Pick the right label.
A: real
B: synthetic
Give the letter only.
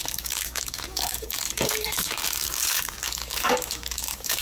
B